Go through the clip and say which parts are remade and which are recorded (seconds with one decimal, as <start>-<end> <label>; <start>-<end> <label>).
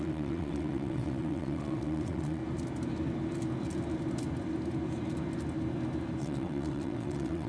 0.0-2.4 remade; 2.4-6.2 recorded; 6.2-7.5 remade